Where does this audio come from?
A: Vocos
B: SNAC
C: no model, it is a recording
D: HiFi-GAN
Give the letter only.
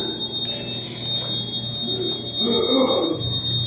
C